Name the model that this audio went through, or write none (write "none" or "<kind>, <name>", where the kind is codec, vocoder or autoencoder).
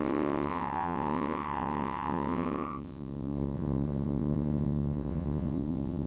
vocoder, WaveNeXt